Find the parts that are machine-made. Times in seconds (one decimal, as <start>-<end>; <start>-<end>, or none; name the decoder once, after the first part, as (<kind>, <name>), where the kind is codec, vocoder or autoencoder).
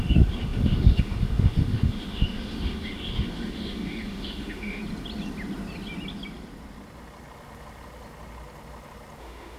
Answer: 0.0-4.8 (autoencoder, DAC-VAE); 9.2-9.6